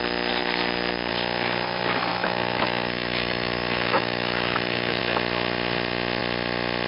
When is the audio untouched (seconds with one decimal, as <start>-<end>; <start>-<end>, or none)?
0.0-2.1; 5.0-6.9